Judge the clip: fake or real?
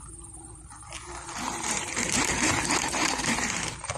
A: fake